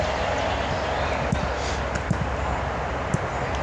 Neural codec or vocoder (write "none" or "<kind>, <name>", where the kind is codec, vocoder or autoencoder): none